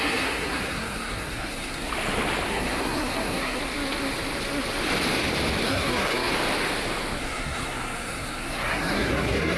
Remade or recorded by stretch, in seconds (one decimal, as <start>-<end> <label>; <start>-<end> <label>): 0.0-1.9 remade; 1.9-2.5 recorded; 2.5-3.6 remade; 3.6-5.6 recorded; 5.6-6.3 remade; 6.3-7.2 recorded; 7.2-9.6 remade